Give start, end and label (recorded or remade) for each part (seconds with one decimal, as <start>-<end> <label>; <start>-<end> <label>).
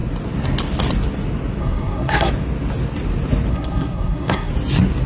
0.0-1.6 recorded; 1.6-2.3 remade; 2.3-3.5 recorded; 3.5-4.5 remade; 4.5-5.1 recorded